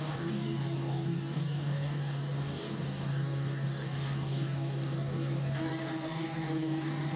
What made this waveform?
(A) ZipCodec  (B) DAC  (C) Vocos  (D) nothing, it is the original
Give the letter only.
B